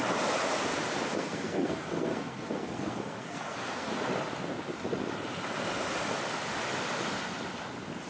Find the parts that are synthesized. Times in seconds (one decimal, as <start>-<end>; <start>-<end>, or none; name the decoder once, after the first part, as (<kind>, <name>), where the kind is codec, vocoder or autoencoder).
1.1-3.9 (codec, SNAC)